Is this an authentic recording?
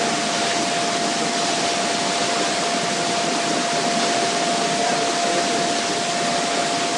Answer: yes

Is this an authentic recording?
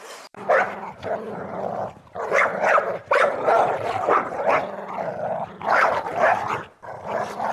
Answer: no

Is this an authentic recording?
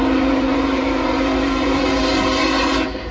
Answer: no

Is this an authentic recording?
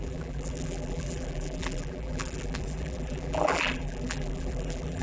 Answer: no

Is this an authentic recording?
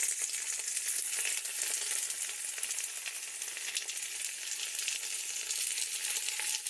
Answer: yes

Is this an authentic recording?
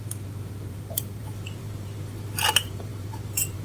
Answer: no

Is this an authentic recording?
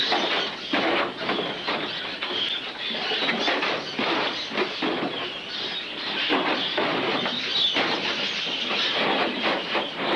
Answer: yes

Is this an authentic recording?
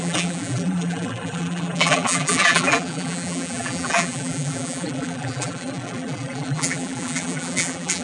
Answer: no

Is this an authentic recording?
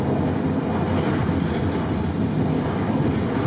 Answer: yes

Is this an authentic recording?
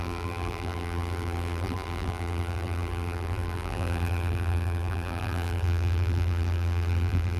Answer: no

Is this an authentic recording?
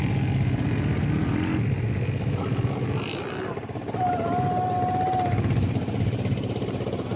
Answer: yes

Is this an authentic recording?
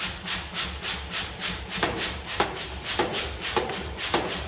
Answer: no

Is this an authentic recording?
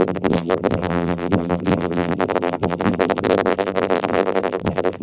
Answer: no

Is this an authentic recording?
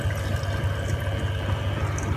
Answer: yes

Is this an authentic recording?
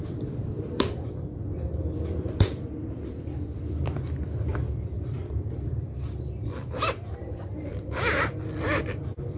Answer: no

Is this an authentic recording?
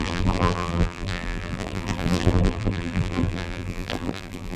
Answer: no